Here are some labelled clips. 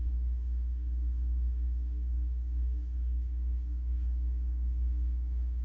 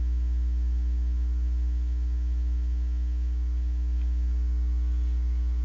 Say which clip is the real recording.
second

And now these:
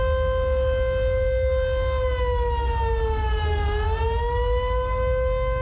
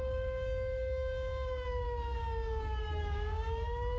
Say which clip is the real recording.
first